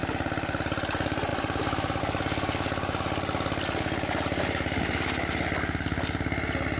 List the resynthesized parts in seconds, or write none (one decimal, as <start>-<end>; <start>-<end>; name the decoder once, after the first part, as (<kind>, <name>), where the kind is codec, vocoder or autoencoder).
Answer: 1.3-2.0 (vocoder, BigVGAN v2)